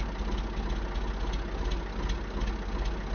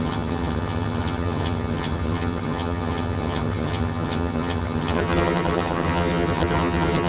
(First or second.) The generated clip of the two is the second